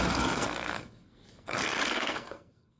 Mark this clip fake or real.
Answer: fake